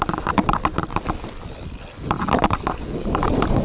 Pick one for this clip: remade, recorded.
recorded